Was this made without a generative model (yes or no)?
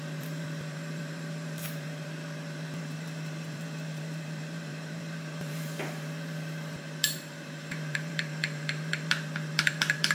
no